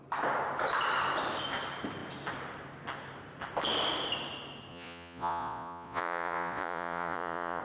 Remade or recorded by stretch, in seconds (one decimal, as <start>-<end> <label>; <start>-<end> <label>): 0.0-4.7 recorded; 4.7-7.6 remade